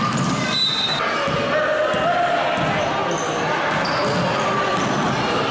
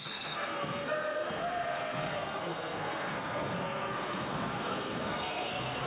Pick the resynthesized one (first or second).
second